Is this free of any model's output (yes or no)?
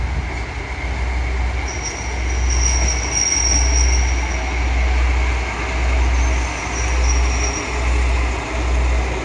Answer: yes